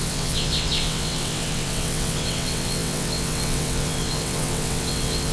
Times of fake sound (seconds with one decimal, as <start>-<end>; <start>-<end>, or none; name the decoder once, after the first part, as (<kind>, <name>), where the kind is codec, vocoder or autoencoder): 0.0-5.3 (vocoder, WaveNeXt)